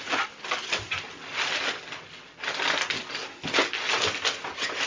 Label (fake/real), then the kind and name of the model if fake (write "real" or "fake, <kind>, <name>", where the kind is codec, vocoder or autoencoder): real